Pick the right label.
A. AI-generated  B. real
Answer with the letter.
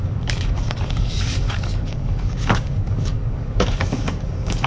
A